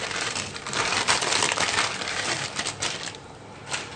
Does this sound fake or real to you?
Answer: fake